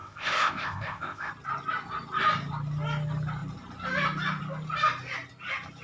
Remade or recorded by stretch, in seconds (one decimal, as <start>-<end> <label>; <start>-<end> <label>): 0.0-1.3 remade; 1.3-5.8 recorded